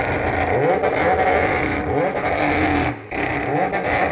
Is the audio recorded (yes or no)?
yes